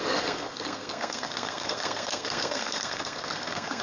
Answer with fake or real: fake